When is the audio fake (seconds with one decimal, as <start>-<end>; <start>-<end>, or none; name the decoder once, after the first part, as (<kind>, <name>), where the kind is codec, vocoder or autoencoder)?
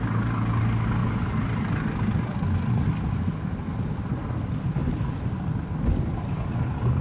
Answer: none